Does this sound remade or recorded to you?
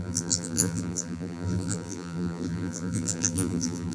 remade